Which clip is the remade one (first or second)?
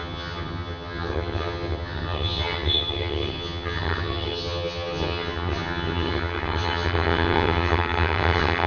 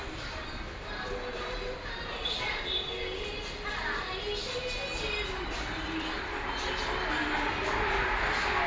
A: first